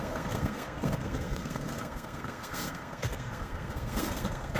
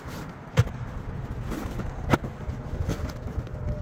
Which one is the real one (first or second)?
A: second